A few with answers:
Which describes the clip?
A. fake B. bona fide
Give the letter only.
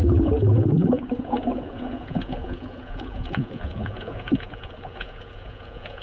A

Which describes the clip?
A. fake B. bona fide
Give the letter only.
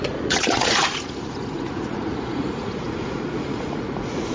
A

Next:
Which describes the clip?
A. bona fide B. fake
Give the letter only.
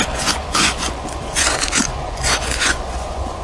B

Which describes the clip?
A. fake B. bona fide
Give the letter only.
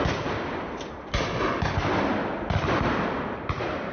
B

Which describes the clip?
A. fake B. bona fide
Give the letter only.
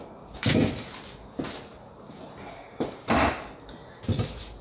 B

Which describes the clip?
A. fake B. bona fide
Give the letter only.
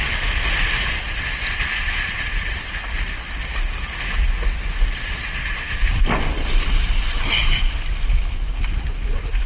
B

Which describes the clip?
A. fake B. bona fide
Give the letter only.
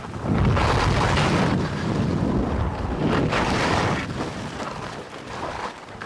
B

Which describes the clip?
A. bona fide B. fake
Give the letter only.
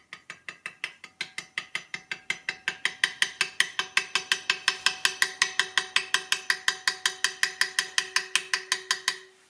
A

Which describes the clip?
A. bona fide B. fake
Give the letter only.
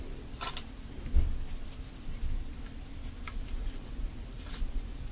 A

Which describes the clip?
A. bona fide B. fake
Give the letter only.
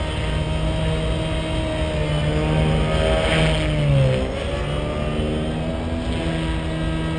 A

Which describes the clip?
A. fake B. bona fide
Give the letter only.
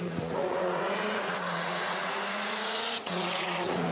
A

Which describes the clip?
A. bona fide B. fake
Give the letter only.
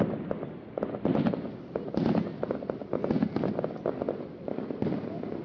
A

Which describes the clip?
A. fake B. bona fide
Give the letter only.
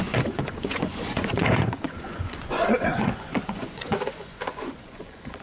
A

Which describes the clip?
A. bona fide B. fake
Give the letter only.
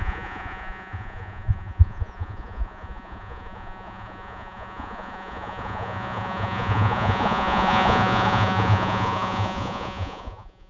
B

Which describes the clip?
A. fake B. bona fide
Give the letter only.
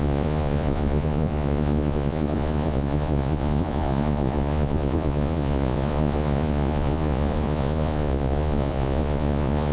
A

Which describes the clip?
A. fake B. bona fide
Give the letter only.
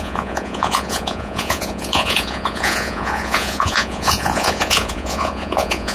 A